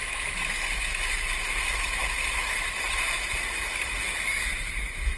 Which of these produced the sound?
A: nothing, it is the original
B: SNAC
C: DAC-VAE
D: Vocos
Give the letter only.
C